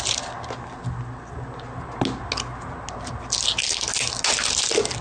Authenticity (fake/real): real